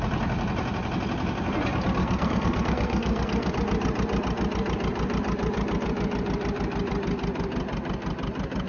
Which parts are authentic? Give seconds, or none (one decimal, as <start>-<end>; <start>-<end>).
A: 0.0-2.0; 3.5-8.7